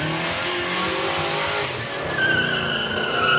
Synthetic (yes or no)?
no